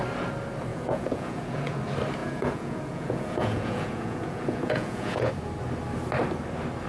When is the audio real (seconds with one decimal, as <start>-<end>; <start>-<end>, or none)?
0.0-0.7; 1.8-2.2; 5.3-6.9